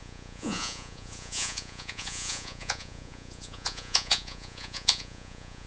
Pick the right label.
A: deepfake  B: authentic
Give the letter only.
A